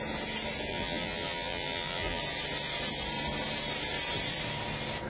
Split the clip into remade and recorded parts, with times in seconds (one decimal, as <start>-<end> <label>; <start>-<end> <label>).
0.0-0.7 recorded; 0.7-2.2 remade; 2.2-5.1 recorded